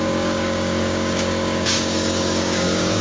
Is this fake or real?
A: fake